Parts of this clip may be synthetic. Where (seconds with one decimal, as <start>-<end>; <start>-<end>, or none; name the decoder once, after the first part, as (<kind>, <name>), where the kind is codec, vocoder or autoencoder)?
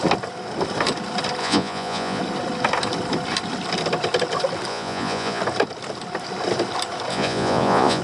1.4-2.2 (vocoder, Vocos); 4.7-5.4; 7.1-8.0